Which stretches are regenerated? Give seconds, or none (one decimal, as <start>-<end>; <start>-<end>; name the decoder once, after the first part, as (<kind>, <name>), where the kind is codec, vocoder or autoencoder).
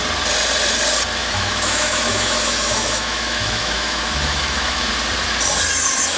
1.2-4.9 (autoencoder, DAC-VAE)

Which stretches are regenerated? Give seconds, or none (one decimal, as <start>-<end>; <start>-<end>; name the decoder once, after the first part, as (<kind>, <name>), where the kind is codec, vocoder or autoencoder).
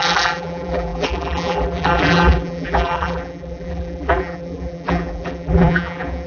0.0-6.3 (vocoder, BigVGAN v2)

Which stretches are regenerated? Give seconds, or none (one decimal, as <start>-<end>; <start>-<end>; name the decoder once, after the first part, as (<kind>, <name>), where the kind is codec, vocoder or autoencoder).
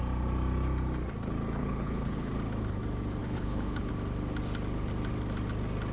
1.6-2.3 (codec, HILCodec); 3.2-3.9